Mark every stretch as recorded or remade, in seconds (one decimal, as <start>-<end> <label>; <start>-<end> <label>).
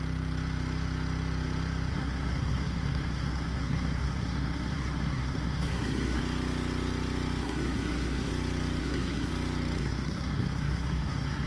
0.0-1.9 recorded; 1.9-6.2 remade; 6.2-7.4 recorded; 7.4-8.3 remade; 8.3-8.8 recorded; 8.8-9.3 remade; 9.3-9.8 recorded; 9.8-11.5 remade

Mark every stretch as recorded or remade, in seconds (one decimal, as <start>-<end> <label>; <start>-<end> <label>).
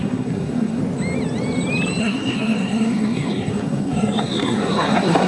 0.0-0.8 remade; 0.8-2.0 recorded; 2.0-5.3 remade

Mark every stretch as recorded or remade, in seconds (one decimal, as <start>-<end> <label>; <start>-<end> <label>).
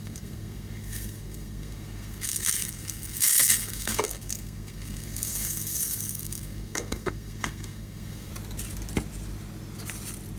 0.0-8.3 remade; 8.3-10.4 recorded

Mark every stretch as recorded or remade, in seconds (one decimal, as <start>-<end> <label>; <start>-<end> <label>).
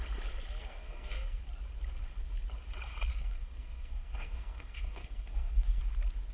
0.0-0.6 recorded; 0.6-1.4 remade; 1.4-3.1 recorded; 3.1-5.8 remade; 5.8-6.3 recorded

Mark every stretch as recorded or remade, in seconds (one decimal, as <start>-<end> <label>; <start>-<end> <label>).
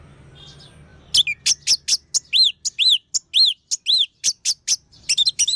0.0-5.6 recorded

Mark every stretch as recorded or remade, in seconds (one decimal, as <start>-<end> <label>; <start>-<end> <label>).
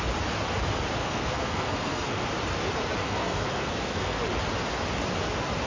0.0-1.0 recorded; 1.0-2.3 remade; 2.3-3.0 recorded; 3.0-4.2 remade; 4.2-5.7 recorded